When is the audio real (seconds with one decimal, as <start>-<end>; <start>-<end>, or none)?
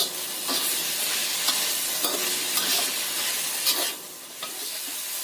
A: 0.0-5.2